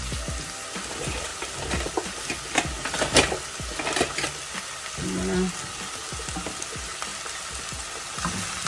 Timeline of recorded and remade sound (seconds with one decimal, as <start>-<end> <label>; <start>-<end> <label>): 0.0-8.7 recorded